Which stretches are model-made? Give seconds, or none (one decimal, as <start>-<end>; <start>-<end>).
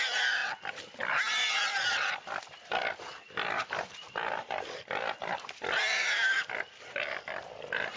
0.0-0.4; 1.5-8.0